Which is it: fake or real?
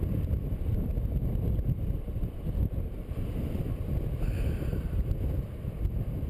fake